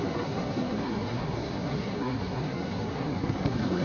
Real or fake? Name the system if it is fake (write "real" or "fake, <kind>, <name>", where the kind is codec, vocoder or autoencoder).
fake, codec, SNAC